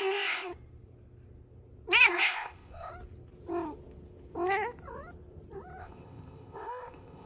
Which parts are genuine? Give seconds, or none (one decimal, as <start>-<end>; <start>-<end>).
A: 0.5-2.1; 2.9-5.8